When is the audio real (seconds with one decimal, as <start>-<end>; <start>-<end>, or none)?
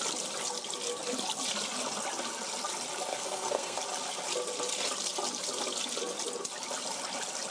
0.0-3.1; 3.8-7.5